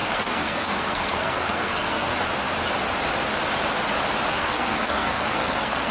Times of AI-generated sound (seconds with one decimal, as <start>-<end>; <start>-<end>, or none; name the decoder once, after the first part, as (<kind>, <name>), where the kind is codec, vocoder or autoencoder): 0.0-2.1 (codec, SNAC); 4.3-5.9

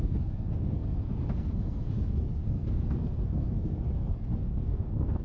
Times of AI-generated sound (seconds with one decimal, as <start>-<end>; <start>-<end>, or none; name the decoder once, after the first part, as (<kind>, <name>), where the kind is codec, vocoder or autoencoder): 0.0-5.2 (codec, SNAC)